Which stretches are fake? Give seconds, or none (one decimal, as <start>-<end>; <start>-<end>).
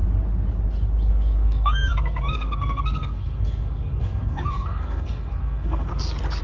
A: 1.1-5.9